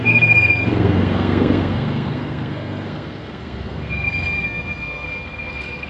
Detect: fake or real fake